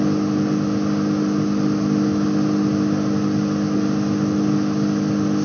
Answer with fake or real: real